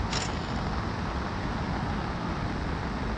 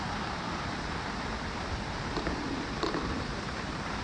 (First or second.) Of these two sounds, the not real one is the second